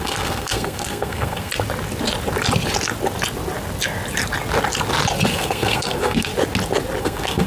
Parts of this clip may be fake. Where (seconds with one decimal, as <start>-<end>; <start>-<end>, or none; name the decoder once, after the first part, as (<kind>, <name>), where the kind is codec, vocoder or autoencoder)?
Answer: 0.0-1.5 (codec, SNAC); 5.3-6.3; 7.0-7.5